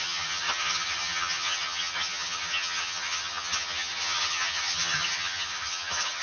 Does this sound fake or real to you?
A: fake